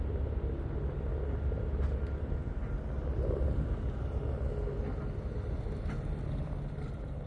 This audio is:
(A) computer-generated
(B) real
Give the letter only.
B